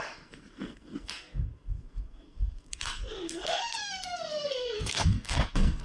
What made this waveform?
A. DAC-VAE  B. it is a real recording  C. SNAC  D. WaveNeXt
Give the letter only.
C